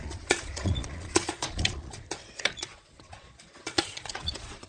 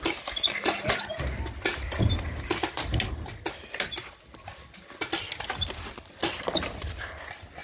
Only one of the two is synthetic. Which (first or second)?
first